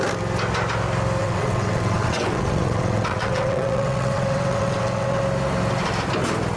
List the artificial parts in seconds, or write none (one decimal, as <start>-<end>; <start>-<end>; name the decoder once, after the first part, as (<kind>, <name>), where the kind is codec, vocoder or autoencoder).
1.2-5.2 (vocoder, WaveNeXt)

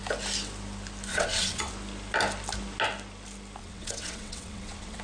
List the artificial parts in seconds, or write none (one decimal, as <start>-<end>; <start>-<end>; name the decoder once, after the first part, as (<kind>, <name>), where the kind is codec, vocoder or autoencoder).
1.1-1.7 (vocoder, WaveNeXt); 3.6-5.0

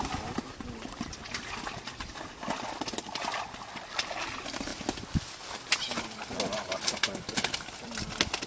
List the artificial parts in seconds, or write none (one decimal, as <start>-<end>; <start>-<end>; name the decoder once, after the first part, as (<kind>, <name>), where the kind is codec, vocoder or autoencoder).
none

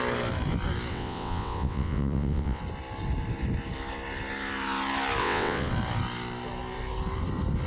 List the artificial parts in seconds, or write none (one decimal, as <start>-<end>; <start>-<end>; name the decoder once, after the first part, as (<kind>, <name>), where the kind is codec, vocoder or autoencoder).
0.9-2.6 (vocoder, WaveNeXt); 5.2-5.7

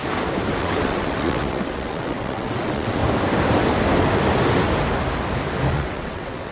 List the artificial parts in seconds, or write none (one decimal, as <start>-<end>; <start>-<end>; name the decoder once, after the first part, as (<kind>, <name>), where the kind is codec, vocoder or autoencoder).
0.6-3.0 (vocoder, WaveNeXt); 5.7-6.5